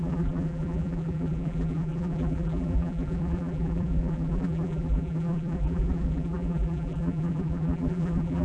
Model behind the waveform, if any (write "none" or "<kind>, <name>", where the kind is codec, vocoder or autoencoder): vocoder, BigVGAN v2